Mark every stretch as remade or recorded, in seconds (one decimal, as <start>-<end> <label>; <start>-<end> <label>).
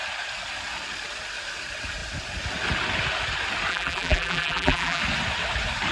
0.0-3.7 recorded; 3.7-5.0 remade; 5.0-5.9 recorded